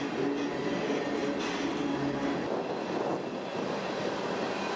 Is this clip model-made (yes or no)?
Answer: no